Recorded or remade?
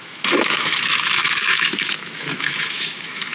remade